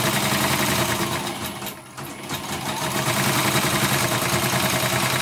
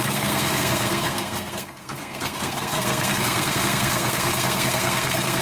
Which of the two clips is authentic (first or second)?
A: first